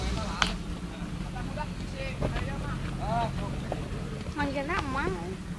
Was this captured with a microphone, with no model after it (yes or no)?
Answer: yes